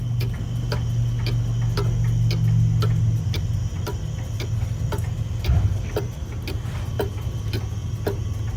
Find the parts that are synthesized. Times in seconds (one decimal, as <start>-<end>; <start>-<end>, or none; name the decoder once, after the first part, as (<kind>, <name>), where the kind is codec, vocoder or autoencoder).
none